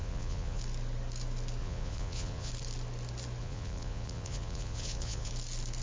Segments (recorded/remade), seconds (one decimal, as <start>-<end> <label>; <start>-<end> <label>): 0.0-0.6 remade; 0.6-1.6 recorded; 1.6-2.5 remade; 2.5-3.4 recorded; 3.4-5.3 remade; 5.3-5.8 recorded